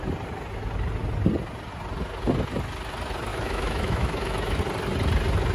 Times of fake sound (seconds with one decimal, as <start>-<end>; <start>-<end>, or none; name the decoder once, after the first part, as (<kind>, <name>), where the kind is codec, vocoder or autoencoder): 3.3-4.6 (autoencoder, DAC-VAE)